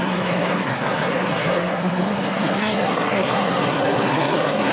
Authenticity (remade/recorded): remade